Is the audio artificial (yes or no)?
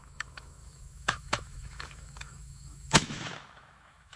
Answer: yes